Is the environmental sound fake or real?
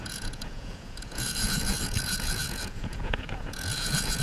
fake